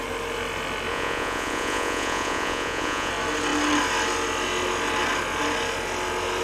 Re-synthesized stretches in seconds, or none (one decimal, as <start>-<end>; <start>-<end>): 0.9-3.1